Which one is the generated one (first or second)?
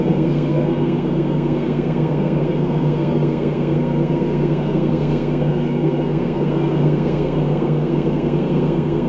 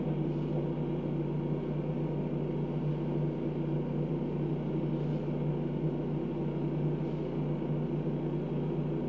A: first